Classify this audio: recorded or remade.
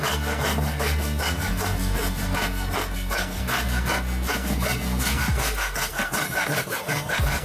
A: remade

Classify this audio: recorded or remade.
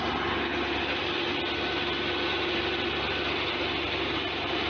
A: recorded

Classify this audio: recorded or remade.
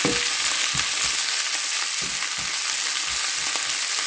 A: recorded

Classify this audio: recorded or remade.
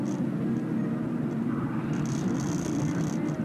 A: recorded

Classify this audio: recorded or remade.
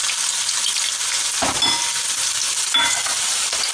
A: recorded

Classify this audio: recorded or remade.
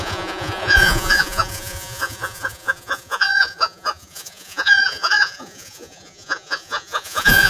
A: remade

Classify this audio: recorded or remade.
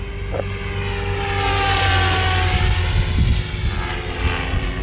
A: recorded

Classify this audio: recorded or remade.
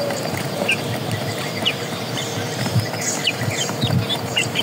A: remade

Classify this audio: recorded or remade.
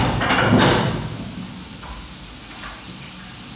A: recorded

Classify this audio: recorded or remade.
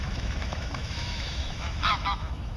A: remade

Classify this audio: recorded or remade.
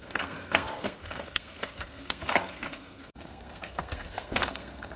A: remade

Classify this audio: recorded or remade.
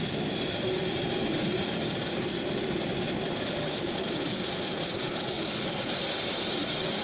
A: recorded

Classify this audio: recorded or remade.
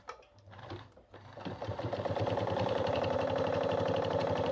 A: remade